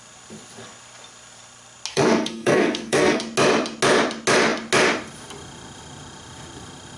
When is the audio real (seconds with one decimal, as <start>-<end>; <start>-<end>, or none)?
0.0-1.9; 3.2-7.0